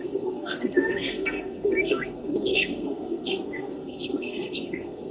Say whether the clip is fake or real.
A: fake